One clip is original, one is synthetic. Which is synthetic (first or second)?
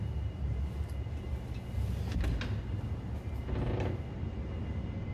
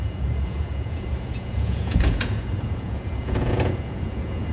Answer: second